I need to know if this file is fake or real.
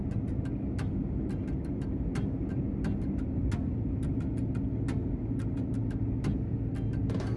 real